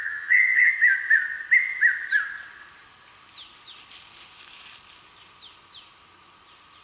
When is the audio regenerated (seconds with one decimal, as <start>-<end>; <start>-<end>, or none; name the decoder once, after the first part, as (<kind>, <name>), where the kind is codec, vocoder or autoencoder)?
0.0-0.7 (vocoder, HiFi-GAN)